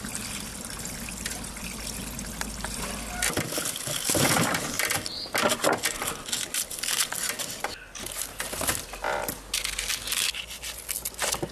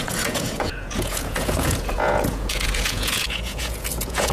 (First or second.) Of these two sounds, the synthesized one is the second